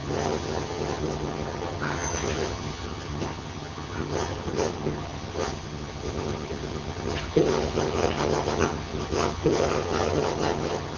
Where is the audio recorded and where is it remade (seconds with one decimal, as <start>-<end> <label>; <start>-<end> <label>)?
0.0-11.0 remade